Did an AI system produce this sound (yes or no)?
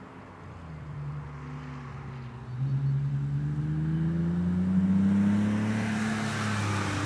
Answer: no